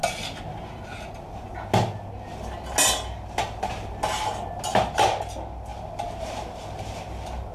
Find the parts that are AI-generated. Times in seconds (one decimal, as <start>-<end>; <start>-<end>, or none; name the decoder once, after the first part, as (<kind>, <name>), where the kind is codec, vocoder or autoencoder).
none